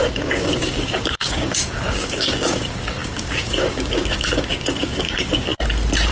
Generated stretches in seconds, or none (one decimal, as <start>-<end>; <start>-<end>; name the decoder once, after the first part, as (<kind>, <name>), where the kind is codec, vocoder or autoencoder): 0.0-5.5 (codec, DAC)